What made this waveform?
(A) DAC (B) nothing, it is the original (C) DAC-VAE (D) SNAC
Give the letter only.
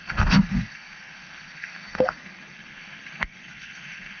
D